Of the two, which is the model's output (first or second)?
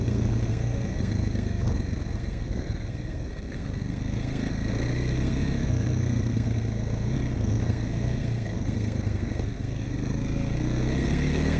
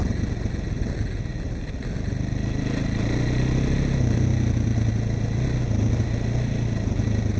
first